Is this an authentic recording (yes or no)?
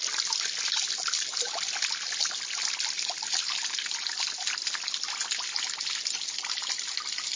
yes